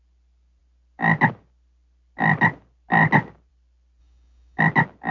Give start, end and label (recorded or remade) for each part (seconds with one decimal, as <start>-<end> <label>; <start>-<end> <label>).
0.0-4.0 recorded; 4.0-4.6 remade; 4.6-5.1 recorded